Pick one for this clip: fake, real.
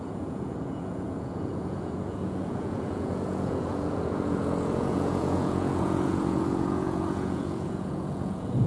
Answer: fake